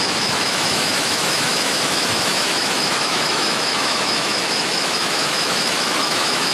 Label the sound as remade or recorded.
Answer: remade